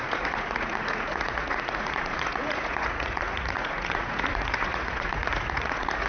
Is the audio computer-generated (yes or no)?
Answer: yes